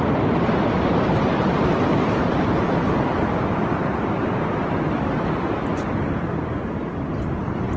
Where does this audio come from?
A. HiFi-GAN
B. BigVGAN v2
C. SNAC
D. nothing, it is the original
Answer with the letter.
D